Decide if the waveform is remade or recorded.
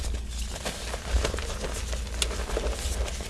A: recorded